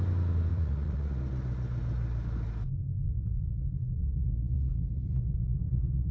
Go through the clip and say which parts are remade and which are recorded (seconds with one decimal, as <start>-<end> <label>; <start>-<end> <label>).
0.0-0.5 recorded; 0.5-1.2 remade; 1.2-3.1 recorded; 3.1-6.1 remade